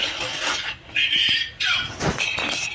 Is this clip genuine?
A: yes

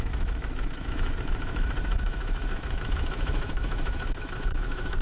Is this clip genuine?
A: no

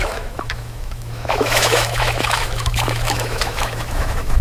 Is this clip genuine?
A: no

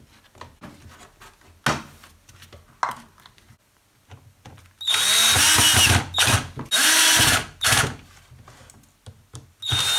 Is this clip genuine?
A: yes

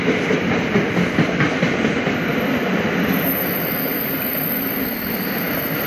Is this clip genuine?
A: yes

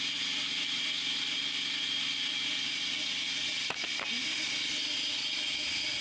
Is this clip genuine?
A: yes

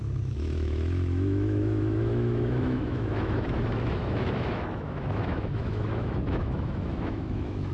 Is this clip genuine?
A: no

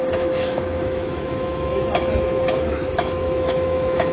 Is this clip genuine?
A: no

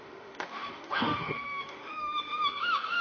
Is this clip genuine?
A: no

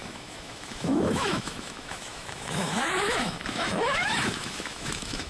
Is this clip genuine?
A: no